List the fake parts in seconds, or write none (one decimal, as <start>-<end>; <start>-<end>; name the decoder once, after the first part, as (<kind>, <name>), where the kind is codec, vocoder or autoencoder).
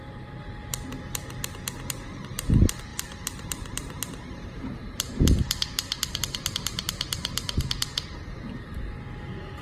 2.9-7.6 (vocoder, BigVGAN v2)